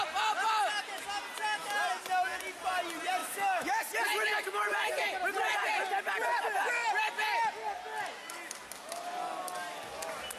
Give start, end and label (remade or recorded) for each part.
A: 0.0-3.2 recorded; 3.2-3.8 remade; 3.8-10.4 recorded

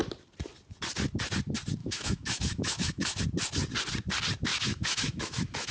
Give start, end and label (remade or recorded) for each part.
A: 0.0-1.8 recorded; 1.8-3.2 remade; 3.2-4.5 recorded; 4.5-5.7 remade

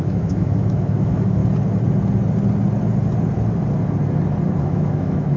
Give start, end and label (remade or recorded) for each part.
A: 0.0-1.4 remade; 1.4-4.6 recorded; 4.6-5.4 remade

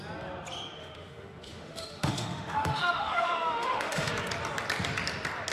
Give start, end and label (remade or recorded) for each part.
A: 0.0-0.8 recorded; 0.8-4.1 remade; 4.1-5.5 recorded

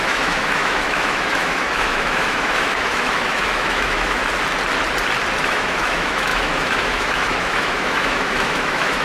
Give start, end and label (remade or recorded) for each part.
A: 0.0-4.2 remade; 4.2-5.4 recorded; 5.4-9.0 remade

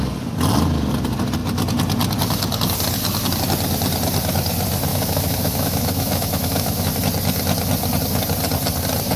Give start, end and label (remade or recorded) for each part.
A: 0.0-4.9 recorded; 4.9-6.9 remade; 6.9-9.2 recorded